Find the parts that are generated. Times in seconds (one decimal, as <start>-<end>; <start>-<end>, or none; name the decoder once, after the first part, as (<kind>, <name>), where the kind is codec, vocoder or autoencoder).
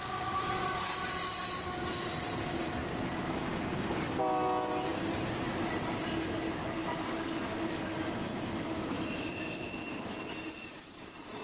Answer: none